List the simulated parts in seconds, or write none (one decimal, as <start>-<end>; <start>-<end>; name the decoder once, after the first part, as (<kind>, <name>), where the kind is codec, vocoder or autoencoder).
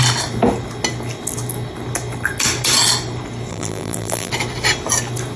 3.5-4.3 (vocoder, BigVGAN v2)